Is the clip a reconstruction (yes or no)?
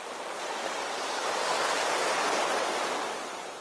no